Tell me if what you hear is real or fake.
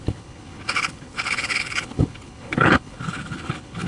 fake